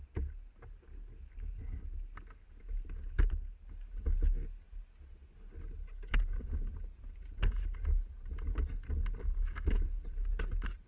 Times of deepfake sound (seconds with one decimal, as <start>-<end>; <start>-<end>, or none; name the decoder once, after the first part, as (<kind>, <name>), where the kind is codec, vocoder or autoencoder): none